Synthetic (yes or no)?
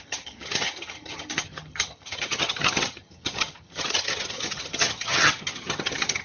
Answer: yes